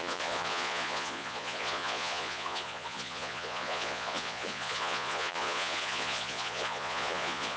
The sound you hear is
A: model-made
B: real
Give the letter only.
A